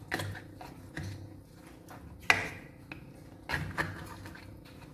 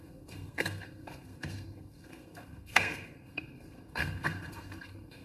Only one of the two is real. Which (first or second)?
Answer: first